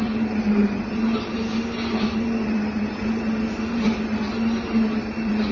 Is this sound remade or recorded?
remade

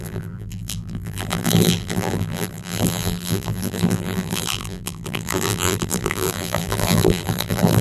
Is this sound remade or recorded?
remade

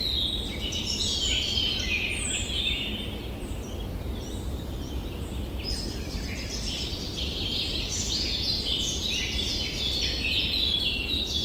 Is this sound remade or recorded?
recorded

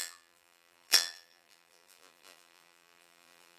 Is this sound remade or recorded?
remade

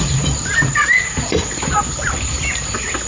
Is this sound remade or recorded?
remade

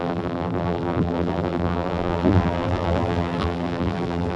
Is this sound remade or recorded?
remade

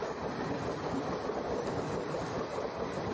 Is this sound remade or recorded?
remade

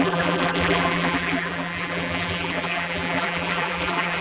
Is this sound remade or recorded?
remade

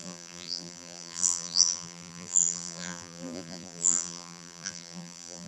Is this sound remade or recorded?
remade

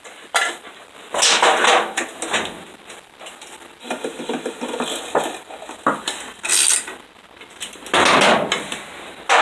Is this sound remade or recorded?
recorded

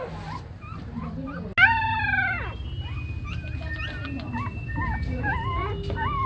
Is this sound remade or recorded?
recorded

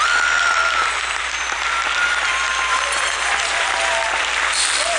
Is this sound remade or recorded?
remade